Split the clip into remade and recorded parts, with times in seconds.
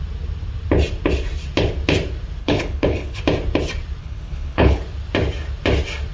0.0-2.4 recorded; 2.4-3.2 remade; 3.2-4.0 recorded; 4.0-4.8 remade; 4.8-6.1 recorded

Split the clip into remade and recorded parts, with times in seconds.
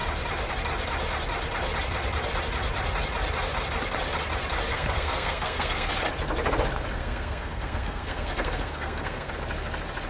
0.0-4.7 recorded; 4.7-5.9 remade; 5.9-7.0 recorded; 7.0-9.3 remade; 9.3-10.1 recorded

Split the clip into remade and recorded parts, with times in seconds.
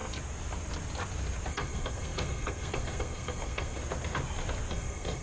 0.0-1.5 recorded; 1.5-3.8 remade; 3.8-4.7 recorded; 4.7-5.2 remade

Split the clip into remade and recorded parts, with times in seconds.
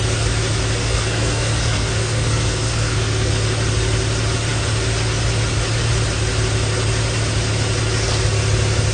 0.0-0.8 recorded; 0.8-3.3 remade; 3.3-8.9 recorded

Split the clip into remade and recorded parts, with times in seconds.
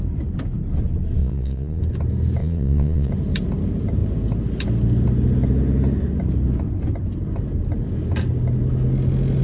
0.0-1.2 recorded; 1.2-1.8 remade; 1.8-2.4 recorded; 2.4-3.1 remade; 3.1-9.4 recorded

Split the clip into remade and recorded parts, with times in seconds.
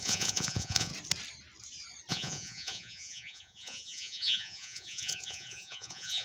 0.0-0.9 remade; 0.9-2.1 recorded; 2.1-6.2 remade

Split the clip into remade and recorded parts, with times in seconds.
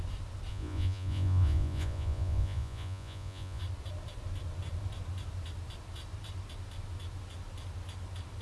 0.0-0.5 recorded; 0.5-3.6 remade; 3.6-8.4 recorded